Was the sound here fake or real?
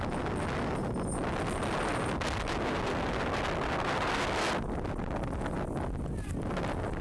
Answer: real